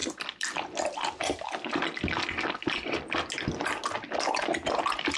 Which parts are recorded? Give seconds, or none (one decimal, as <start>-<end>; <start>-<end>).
0.0-5.2